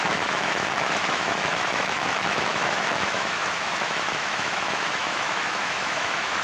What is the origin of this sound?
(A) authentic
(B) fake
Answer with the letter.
B